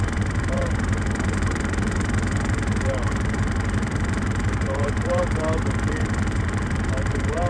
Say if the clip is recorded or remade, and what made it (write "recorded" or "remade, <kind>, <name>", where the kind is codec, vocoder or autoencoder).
remade, vocoder, BigVGAN v2